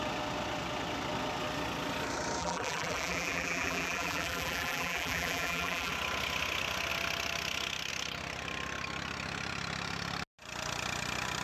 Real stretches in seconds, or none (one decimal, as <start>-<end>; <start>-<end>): 0.0-2.4; 5.9-11.4